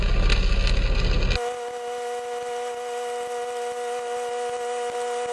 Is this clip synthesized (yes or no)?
no